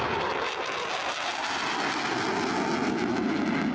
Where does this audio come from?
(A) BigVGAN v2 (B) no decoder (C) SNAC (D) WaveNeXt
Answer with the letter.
B